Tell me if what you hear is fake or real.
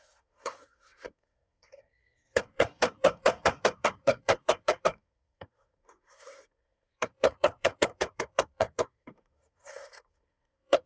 fake